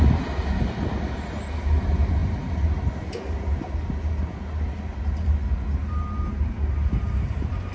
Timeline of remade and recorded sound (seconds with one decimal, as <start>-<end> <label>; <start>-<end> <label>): 0.0-7.7 recorded